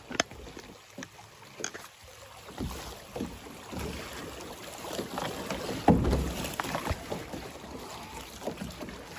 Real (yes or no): yes